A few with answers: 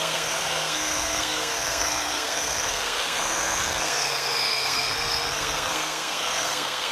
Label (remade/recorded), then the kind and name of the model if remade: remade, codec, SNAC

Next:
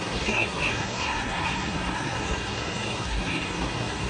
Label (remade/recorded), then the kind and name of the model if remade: remade, codec, SNAC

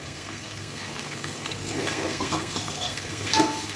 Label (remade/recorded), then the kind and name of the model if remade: remade, codec, SNAC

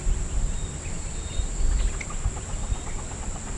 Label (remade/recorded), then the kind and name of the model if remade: recorded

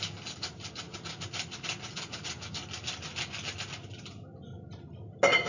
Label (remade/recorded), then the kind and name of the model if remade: recorded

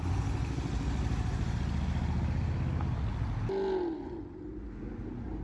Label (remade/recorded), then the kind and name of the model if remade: recorded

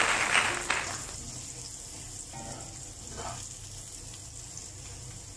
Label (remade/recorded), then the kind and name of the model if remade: recorded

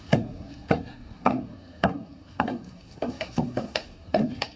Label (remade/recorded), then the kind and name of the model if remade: remade, codec, SNAC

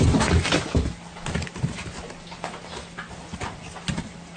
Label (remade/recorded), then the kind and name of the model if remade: recorded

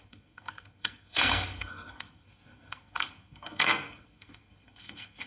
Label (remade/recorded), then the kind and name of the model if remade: remade, codec, SNAC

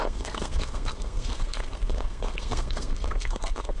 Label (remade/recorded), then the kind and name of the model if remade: remade, codec, SNAC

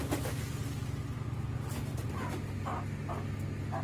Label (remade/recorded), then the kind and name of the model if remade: recorded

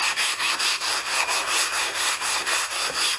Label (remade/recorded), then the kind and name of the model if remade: remade, codec, SNAC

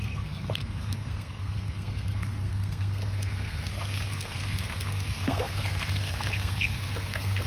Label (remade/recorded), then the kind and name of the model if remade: remade, codec, SNAC